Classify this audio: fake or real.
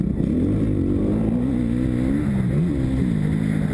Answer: real